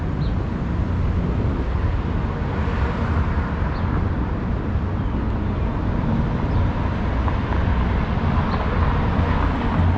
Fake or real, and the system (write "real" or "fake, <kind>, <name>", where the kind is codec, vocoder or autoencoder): real